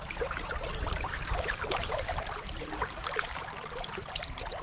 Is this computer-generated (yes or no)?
yes